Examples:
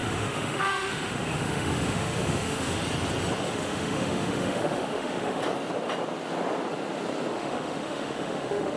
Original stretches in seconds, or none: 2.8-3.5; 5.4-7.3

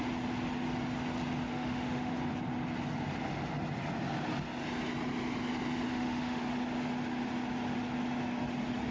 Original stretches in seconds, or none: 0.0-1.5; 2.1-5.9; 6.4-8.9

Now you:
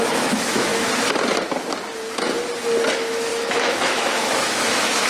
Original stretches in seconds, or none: 0.7-2.9

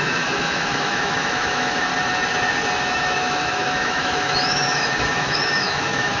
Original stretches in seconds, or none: 1.9-2.9